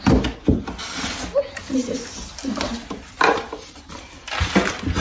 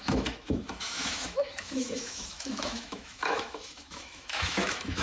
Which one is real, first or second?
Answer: first